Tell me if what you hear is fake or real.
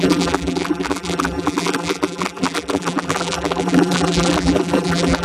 fake